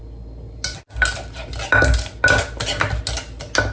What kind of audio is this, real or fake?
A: real